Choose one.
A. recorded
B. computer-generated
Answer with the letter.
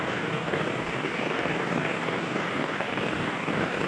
B